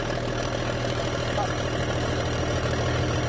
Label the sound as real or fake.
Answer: real